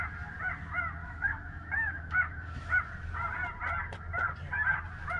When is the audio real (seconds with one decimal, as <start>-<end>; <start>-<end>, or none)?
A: 0.0-1.0; 2.8-5.2